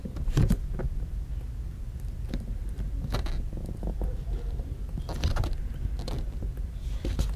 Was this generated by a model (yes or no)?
no